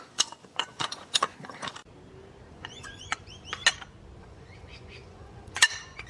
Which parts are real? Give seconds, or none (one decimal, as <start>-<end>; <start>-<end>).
1.8-2.5; 3.6-4.2